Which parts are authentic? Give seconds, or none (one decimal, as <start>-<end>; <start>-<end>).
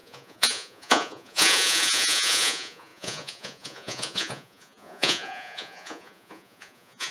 none